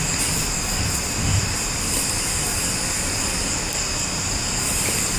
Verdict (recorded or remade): recorded